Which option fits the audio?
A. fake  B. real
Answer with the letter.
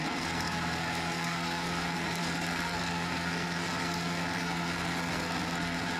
A